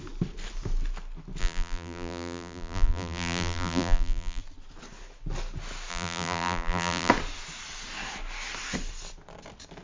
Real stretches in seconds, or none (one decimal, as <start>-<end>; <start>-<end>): 0.0-1.4; 4.4-5.9; 7.1-9.8